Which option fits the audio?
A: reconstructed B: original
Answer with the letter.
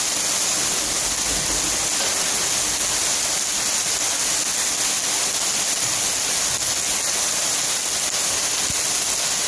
B